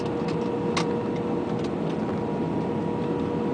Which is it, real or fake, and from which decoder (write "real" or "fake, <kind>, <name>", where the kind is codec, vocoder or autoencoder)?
real